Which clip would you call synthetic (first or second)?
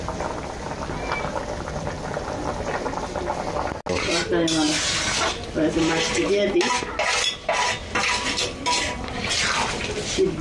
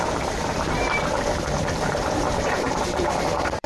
second